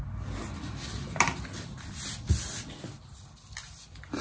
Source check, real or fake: real